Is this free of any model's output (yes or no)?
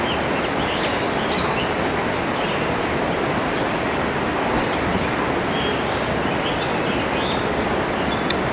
yes